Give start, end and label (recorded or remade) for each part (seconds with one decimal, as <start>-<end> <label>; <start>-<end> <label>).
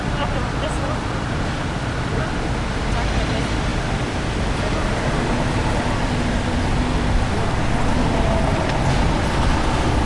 0.0-10.1 recorded